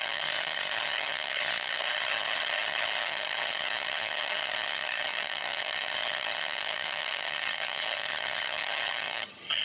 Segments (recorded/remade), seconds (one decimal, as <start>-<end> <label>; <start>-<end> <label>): 0.0-9.6 remade